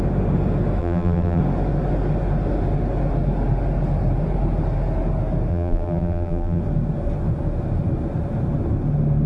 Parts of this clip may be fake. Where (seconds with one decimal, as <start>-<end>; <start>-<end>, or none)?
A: 0.8-1.4; 5.5-6.6